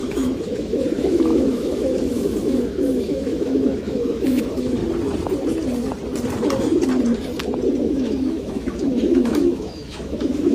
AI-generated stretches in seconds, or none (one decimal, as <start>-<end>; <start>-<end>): 0.0-4.8; 7.8-10.5